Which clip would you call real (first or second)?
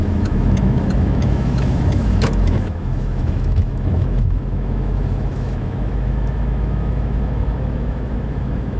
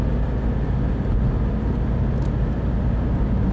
second